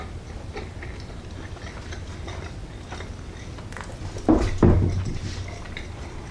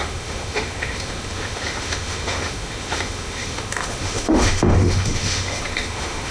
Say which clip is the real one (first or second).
first